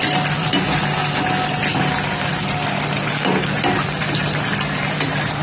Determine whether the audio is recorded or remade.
recorded